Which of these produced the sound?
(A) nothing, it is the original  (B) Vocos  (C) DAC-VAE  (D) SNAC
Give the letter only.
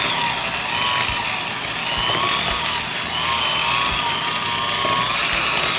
A